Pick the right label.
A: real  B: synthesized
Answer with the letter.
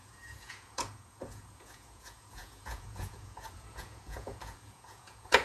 B